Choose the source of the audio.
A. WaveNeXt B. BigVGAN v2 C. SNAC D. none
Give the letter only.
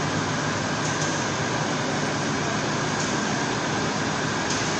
D